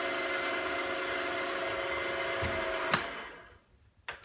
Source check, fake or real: real